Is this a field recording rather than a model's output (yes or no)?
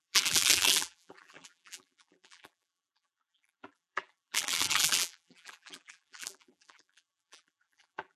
no